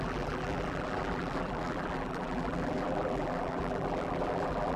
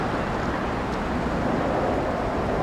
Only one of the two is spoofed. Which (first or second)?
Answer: first